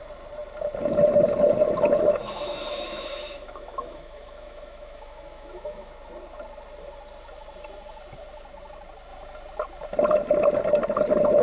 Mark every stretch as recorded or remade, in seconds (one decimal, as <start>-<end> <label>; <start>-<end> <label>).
0.0-2.2 recorded; 2.2-5.9 remade; 5.9-11.4 recorded